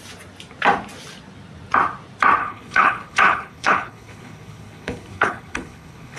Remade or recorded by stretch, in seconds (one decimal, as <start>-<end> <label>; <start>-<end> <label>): 0.0-2.4 recorded; 2.4-6.2 remade